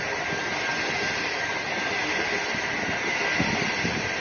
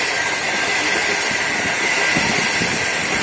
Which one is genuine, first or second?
first